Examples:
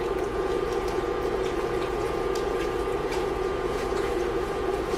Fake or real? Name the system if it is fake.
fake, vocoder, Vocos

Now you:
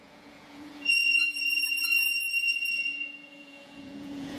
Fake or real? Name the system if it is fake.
fake, vocoder, Vocos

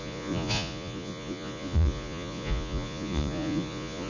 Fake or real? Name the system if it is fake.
fake, vocoder, Vocos